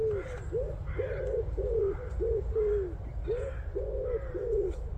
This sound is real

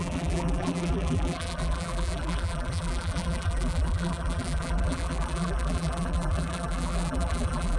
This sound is fake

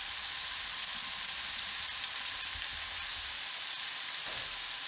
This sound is real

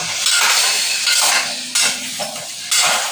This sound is real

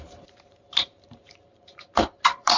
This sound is fake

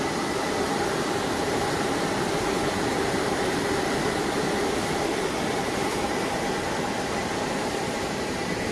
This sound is fake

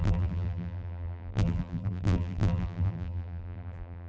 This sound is fake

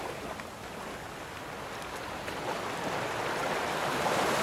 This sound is real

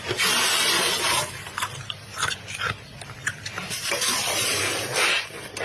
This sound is fake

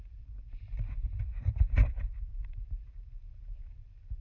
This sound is fake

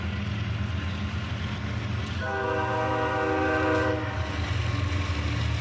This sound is real